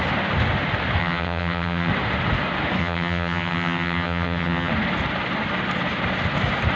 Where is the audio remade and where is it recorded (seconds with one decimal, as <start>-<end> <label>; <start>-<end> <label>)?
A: 0.0-1.0 recorded; 1.0-1.9 remade; 1.9-2.8 recorded; 2.8-4.7 remade; 4.7-6.8 recorded